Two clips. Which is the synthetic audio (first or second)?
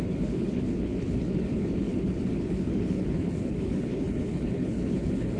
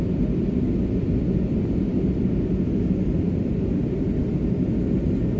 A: first